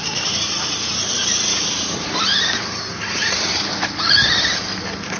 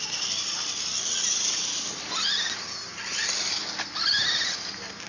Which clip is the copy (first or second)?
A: first